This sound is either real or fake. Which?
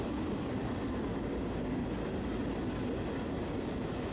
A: real